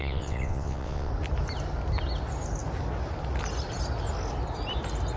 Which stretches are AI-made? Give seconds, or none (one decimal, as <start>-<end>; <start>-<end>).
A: 0.0-1.1